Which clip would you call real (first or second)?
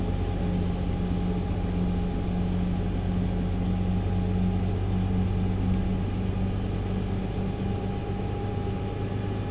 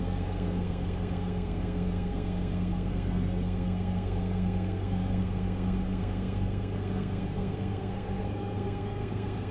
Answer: first